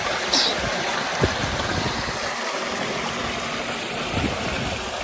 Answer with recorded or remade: recorded